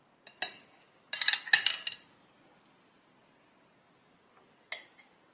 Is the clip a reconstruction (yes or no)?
no